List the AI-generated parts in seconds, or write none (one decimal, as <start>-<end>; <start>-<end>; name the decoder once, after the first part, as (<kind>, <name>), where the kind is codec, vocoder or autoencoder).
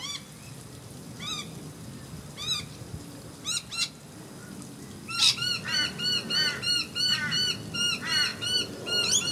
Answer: none